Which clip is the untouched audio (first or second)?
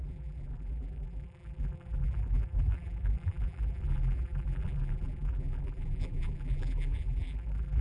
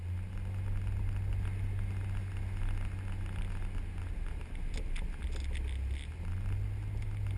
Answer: second